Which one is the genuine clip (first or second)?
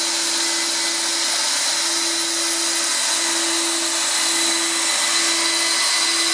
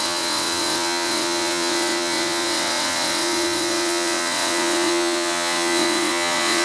first